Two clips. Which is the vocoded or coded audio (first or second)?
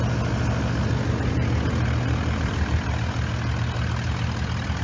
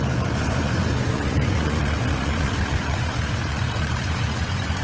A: second